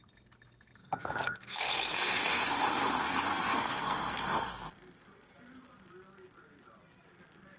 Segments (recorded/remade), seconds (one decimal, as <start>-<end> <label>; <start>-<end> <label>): 0.0-0.8 recorded; 0.8-2.9 remade; 2.9-3.3 recorded; 3.3-4.5 remade; 4.5-7.6 recorded